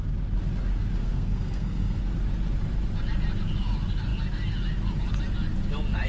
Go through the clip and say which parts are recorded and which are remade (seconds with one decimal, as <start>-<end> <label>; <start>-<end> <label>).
0.0-1.0 recorded; 1.0-2.0 remade; 2.0-6.1 recorded